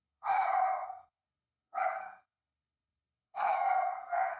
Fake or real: fake